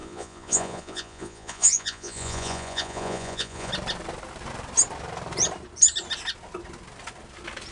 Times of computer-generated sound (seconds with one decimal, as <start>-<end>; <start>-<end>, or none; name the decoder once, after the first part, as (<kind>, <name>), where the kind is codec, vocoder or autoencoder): 0.0-3.7 (vocoder, Vocos)